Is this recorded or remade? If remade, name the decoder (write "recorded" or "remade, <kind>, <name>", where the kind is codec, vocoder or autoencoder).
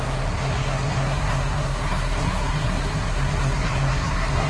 remade, codec, SNAC